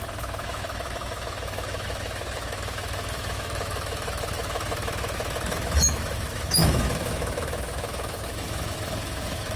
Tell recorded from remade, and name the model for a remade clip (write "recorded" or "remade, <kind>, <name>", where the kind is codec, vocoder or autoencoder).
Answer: remade, autoencoder, DAC-VAE